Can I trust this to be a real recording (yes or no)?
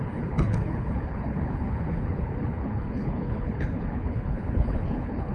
no